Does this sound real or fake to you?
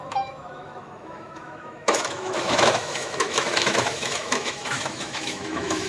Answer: fake